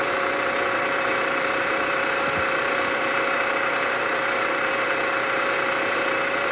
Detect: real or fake fake